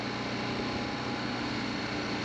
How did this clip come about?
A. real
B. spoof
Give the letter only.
A